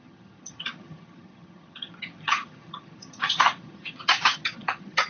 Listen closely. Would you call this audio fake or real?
fake